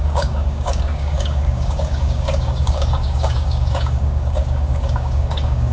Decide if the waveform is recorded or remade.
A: remade